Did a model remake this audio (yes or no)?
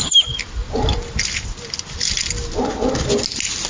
no